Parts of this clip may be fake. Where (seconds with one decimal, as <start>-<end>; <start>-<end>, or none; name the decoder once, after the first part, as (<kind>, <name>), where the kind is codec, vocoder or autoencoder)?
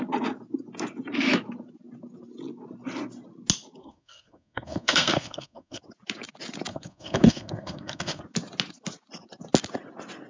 3.8-5.8 (codec, SNAC); 6.7-8.2